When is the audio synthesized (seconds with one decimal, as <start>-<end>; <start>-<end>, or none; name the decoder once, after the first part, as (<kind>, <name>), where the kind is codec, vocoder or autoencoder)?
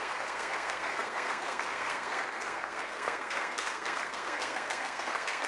0.0-5.5 (codec, SNAC)